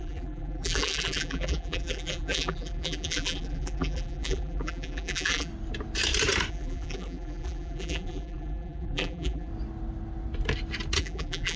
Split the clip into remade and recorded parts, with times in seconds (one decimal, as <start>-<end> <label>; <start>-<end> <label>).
0.0-5.5 remade; 5.5-6.5 recorded; 6.5-9.5 remade; 9.5-11.0 recorded; 11.0-11.6 remade